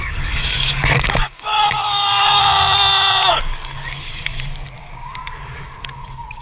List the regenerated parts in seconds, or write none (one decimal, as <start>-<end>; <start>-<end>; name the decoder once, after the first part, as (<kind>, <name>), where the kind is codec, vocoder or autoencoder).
0.0-2.5 (codec, DAC); 3.3-6.4